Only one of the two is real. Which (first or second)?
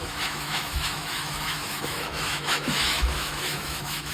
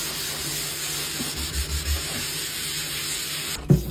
second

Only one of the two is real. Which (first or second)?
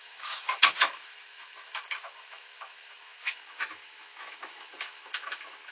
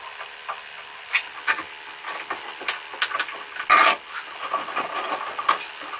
second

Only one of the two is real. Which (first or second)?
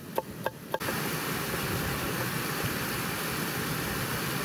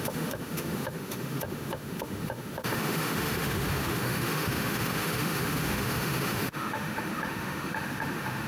first